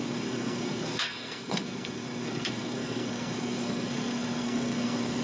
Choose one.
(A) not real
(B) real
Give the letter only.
A